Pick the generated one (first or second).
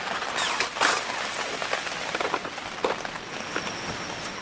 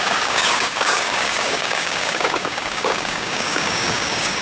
second